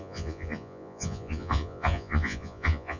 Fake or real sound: fake